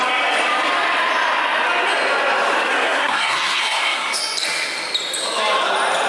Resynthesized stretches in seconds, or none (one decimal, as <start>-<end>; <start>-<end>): 2.7-4.2